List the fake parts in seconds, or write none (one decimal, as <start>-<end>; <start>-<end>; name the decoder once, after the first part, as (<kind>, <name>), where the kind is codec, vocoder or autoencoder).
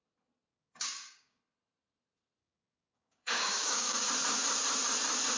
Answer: 0.5-1.4 (codec, DAC); 2.4-4.1